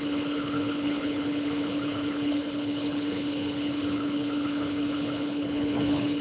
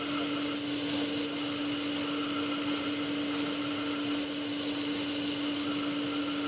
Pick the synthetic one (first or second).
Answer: first